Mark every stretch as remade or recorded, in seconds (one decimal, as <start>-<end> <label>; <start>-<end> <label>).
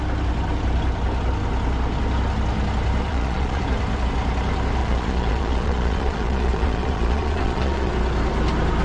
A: 0.0-3.1 recorded; 3.1-3.6 remade; 3.6-4.8 recorded; 4.8-7.9 remade; 7.9-8.8 recorded